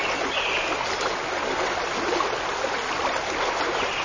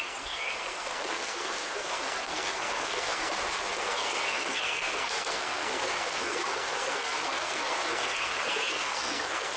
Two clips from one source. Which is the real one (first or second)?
first